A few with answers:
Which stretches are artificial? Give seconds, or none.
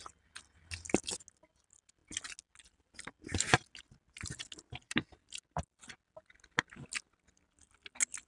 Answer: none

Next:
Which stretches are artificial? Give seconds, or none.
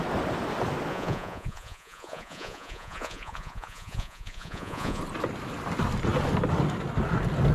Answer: 0.9-5.0 (vocoder, Vocos)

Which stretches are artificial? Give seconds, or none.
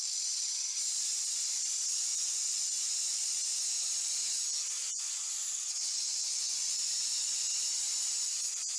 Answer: 2.1-2.8 (vocoder, Vocos); 4.8-6.9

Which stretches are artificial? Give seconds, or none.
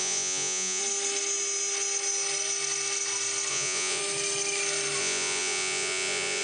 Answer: 0.0-0.8 (vocoder, Vocos); 3.5-4.0; 5.0-6.4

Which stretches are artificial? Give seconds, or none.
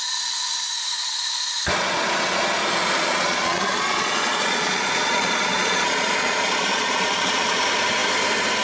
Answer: 3.0-7.6 (vocoder, Vocos)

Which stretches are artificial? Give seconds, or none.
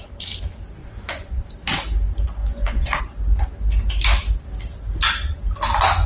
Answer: 0.8-1.4 (vocoder, Vocos); 2.4-3.0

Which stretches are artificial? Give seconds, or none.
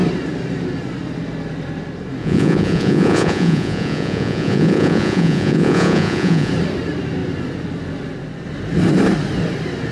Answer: 2.2-6.5 (vocoder, Vocos)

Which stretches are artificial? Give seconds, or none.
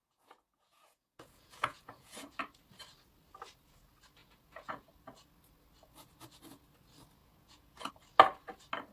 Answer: 0.0-2.4 (vocoder, Vocos); 4.2-4.9; 7.2-7.9